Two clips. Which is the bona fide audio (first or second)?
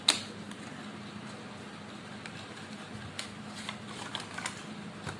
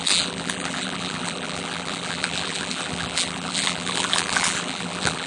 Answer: first